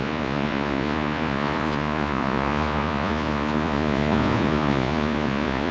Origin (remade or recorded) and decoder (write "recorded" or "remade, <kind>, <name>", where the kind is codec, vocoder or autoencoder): remade, vocoder, Vocos